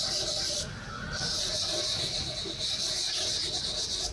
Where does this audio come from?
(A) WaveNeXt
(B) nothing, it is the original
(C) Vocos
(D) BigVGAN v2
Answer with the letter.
B